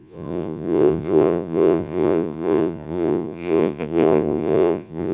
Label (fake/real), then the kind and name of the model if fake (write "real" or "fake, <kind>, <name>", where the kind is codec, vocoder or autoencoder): fake, vocoder, Vocos